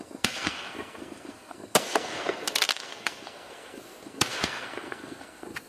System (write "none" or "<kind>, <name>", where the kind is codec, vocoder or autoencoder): codec, SNAC